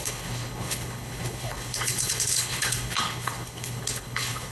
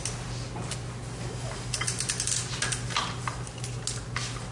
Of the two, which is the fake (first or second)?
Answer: first